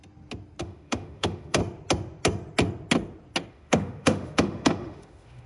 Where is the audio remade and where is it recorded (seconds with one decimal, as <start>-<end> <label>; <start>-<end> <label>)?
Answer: 0.0-0.6 recorded; 0.6-1.6 remade; 1.6-3.5 recorded; 3.5-5.5 remade